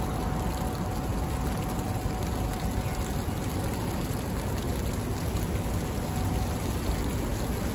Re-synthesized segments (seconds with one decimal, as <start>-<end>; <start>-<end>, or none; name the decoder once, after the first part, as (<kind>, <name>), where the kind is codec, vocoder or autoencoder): none